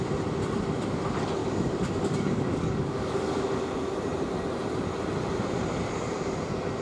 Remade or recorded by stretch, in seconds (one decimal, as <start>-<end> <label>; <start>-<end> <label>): 0.0-1.4 recorded; 1.4-3.6 remade; 3.6-6.8 recorded